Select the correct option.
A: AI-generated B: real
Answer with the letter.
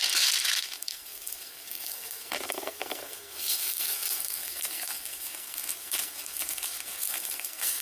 A